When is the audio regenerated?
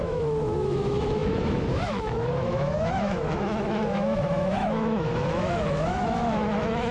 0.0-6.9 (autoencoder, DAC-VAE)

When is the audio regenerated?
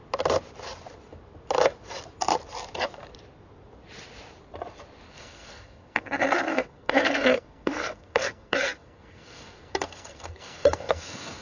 5.1-11.4 (codec, SNAC)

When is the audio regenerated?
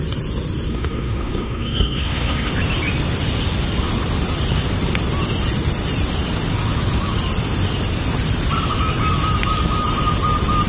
0.7-2.5 (codec, SNAC)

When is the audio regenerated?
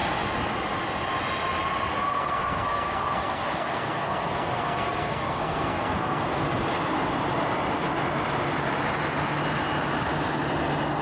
2.1-6.4 (codec, SNAC)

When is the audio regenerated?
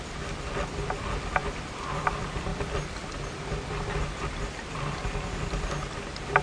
1.4-2.1 (vocoder, BigVGAN v2); 2.5-3.8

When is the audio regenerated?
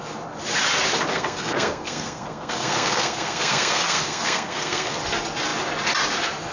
1.1-5.0 (codec, SNAC)